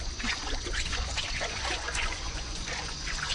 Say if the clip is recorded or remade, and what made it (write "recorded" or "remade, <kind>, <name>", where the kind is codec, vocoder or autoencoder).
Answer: remade, vocoder, Vocos